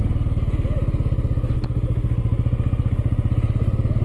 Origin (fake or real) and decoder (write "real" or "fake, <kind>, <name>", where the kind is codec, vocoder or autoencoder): real